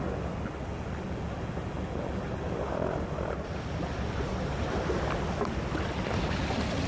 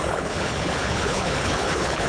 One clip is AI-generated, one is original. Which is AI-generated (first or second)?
second